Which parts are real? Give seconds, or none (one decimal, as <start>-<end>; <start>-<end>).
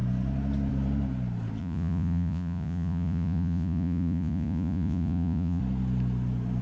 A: 0.0-1.6; 5.6-6.6